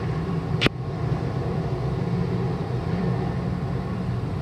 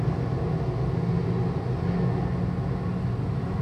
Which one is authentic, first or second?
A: second